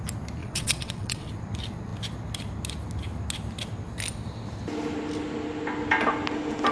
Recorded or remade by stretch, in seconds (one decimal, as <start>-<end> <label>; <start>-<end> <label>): 0.0-0.4 recorded; 0.4-1.3 remade; 1.3-6.7 recorded